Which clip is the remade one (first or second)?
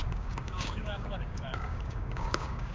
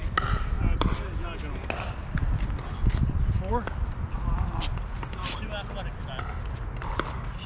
first